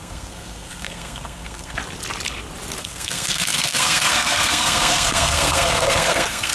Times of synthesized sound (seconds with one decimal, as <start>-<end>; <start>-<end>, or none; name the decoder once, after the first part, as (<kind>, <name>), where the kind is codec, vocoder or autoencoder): 0.0-1.8 (codec, SNAC); 2.8-6.5